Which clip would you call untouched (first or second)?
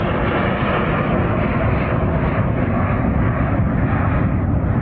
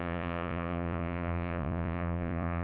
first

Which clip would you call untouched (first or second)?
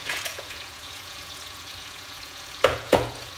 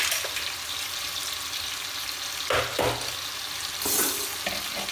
second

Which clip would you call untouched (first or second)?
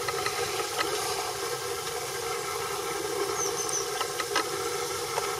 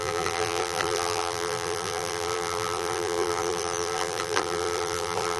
first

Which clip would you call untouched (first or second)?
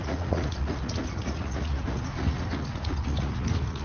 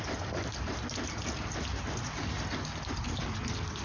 second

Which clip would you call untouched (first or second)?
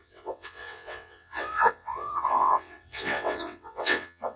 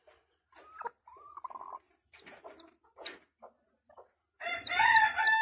second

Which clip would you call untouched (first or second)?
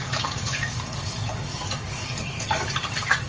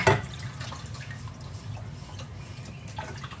second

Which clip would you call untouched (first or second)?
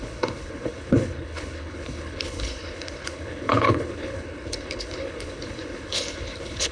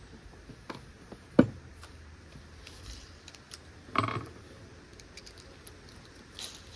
second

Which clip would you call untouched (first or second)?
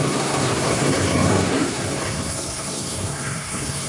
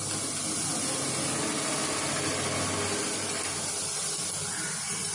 second